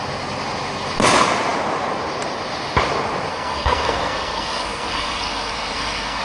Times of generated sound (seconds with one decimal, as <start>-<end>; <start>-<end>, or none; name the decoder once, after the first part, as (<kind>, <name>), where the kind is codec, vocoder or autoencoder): 3.3-6.2 (codec, SNAC)